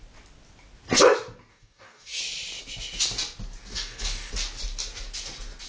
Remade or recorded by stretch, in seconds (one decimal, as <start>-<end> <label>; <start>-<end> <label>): 0.0-1.5 recorded; 1.5-2.2 remade; 2.2-3.7 recorded; 3.7-4.3 remade; 4.3-5.7 recorded